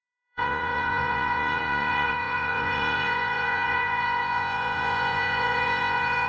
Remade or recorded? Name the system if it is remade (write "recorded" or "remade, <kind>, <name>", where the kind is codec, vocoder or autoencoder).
remade, vocoder, Vocos